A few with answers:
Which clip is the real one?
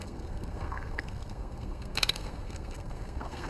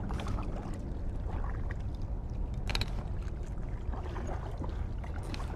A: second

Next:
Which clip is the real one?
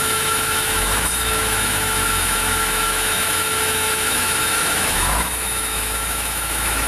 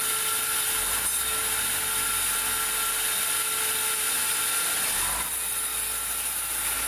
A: second